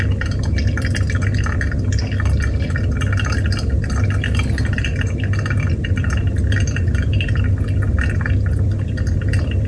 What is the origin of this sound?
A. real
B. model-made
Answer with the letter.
A